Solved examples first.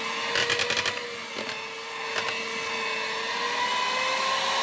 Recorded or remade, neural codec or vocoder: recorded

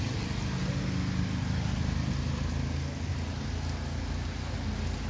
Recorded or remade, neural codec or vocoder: recorded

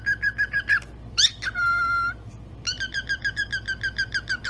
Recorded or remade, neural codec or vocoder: remade, vocoder, BigVGAN v2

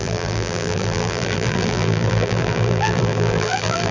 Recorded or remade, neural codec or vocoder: remade, vocoder, BigVGAN v2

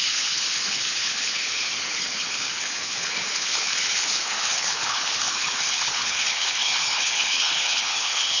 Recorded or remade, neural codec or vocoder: remade, codec, HILCodec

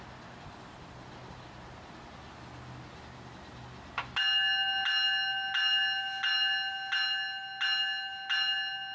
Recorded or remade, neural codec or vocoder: recorded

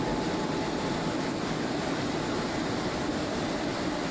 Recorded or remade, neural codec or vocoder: recorded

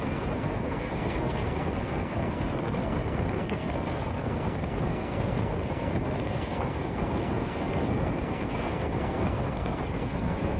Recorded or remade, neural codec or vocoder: remade, codec, SNAC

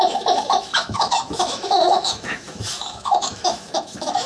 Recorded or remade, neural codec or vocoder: remade, autoencoder, DAC-VAE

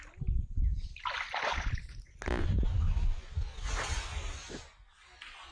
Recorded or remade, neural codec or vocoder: recorded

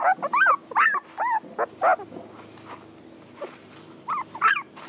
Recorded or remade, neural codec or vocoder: recorded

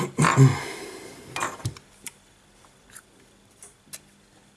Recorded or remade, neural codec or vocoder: recorded